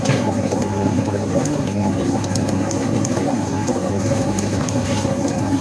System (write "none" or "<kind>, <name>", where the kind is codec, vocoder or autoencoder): codec, SNAC